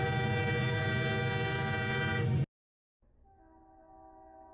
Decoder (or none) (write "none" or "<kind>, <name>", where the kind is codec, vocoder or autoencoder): none